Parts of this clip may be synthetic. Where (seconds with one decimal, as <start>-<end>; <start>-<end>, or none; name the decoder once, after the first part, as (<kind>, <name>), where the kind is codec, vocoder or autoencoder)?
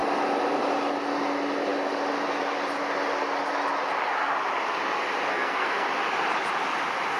5.3-5.9 (codec, SNAC)